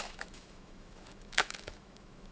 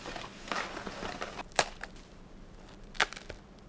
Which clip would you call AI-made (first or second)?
first